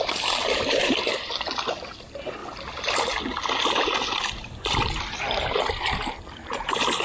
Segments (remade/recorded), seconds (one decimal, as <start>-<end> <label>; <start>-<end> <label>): 0.0-7.0 recorded